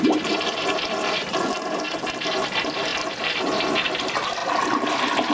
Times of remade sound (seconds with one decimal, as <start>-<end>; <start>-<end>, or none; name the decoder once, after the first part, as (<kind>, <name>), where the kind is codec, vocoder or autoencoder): 0.0-2.9 (vocoder, BigVGAN v2); 3.9-4.4